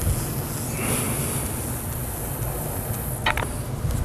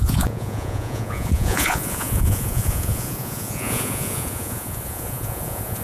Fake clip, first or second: second